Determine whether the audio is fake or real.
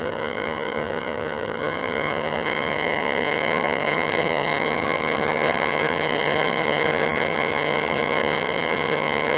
fake